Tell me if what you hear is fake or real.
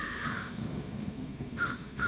fake